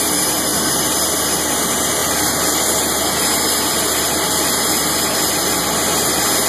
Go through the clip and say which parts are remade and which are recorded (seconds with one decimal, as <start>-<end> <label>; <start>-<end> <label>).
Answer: 0.0-0.5 recorded; 0.5-1.6 remade; 1.6-2.0 recorded; 2.0-5.6 remade; 5.6-6.5 recorded